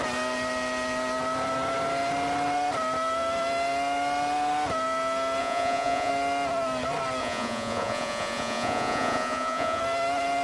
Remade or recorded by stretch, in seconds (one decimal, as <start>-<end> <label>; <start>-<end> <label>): 0.0-5.4 recorded; 5.4-6.1 remade; 6.1-7.2 recorded; 7.2-9.8 remade; 9.8-10.4 recorded